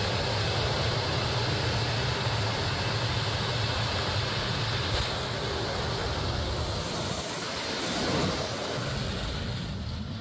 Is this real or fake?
real